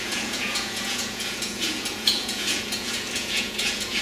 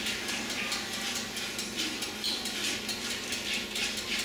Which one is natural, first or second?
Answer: second